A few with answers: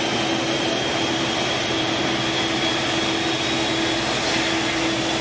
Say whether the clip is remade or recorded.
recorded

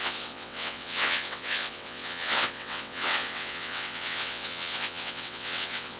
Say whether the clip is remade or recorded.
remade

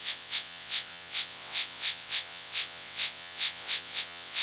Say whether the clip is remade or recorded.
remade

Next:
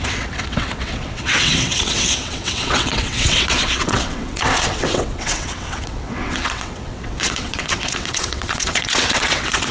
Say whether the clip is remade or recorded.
remade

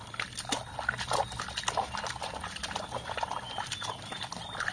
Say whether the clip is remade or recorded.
recorded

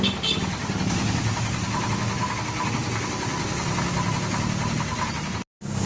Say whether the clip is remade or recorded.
recorded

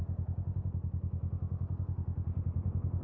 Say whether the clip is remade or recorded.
recorded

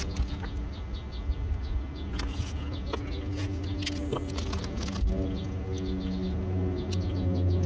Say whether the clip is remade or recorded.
recorded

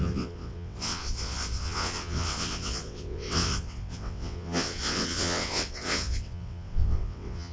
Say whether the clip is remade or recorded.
remade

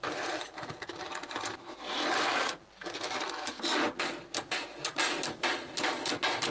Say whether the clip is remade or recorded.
recorded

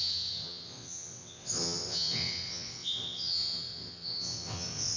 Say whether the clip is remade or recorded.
remade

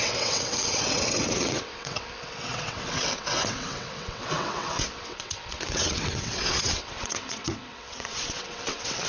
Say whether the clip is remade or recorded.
remade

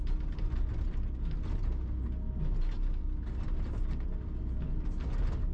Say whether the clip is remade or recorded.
recorded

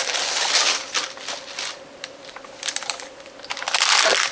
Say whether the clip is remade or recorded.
recorded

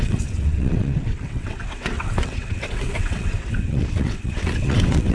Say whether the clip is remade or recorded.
remade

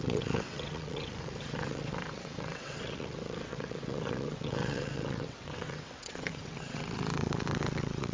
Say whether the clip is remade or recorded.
remade